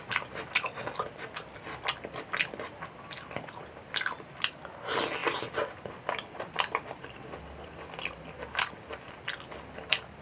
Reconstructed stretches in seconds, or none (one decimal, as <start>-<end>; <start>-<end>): 5.2-7.2